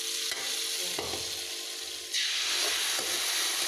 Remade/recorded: recorded